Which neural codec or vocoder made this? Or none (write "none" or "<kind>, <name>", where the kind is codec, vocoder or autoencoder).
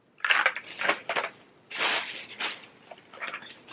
none